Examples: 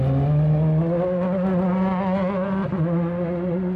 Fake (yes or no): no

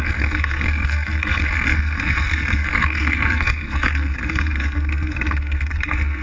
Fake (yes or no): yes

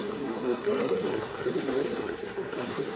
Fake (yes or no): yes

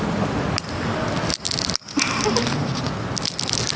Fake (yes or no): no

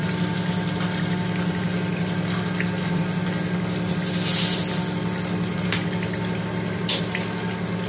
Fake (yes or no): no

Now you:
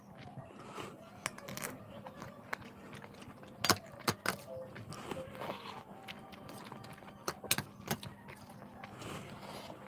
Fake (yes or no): no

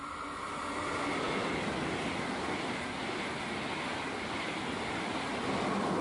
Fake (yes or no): no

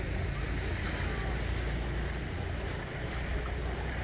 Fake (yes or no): no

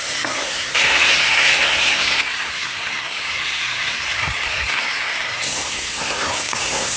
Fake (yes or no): yes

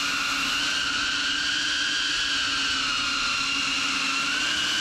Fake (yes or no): no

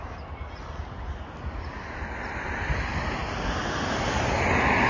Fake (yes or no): no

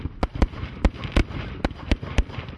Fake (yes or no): no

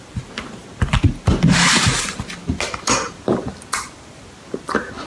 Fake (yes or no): no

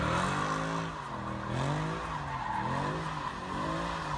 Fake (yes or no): no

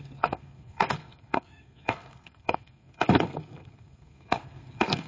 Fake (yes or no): yes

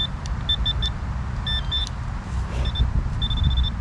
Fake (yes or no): no